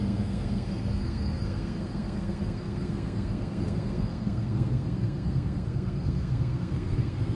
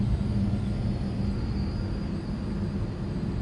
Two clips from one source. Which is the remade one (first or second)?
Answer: first